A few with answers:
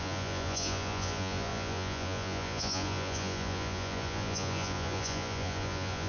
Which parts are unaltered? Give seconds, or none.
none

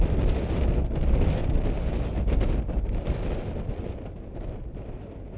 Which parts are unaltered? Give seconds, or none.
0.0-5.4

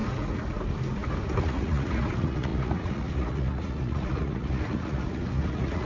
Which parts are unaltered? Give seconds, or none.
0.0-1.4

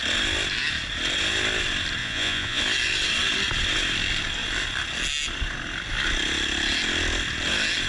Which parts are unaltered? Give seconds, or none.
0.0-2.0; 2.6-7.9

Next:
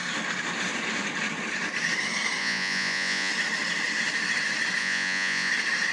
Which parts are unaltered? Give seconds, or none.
0.0-2.4; 3.3-4.8; 5.5-5.9